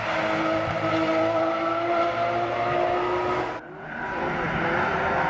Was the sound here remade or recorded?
recorded